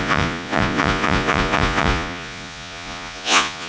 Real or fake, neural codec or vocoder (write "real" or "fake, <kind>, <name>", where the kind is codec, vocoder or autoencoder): fake, vocoder, Vocos